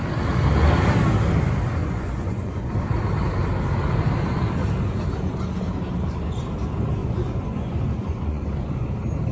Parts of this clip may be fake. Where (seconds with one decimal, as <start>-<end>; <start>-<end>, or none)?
1.8-2.7; 7.0-8.9